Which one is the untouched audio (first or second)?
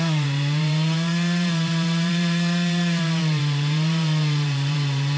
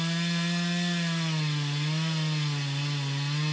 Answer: second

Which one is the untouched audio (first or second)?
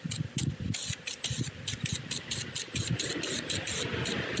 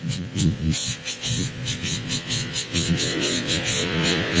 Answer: first